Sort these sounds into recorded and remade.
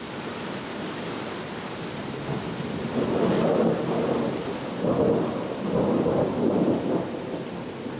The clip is recorded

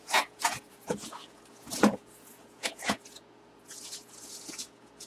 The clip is remade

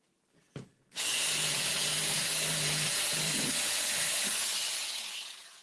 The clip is remade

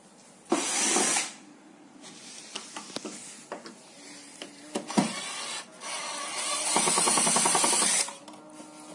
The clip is recorded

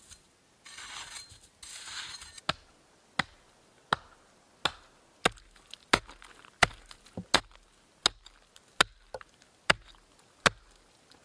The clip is recorded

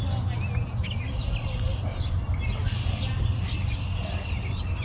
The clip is recorded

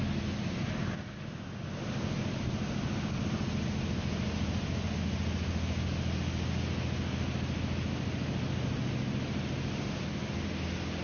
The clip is recorded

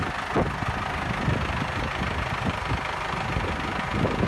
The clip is recorded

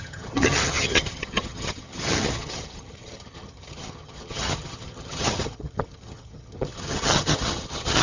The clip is remade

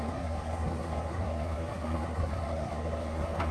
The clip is remade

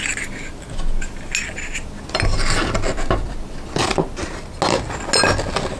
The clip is recorded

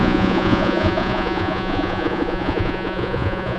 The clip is remade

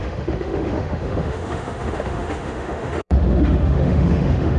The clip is remade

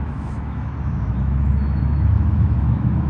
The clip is remade